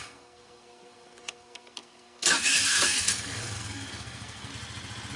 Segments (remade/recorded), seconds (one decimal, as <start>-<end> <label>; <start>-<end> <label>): 0.0-4.5 remade; 4.5-5.2 recorded